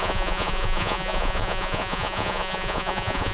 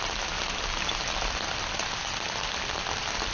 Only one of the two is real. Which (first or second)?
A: second